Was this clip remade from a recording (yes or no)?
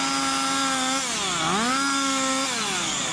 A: no